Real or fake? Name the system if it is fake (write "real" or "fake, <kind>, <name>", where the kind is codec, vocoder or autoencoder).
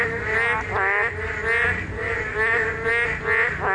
real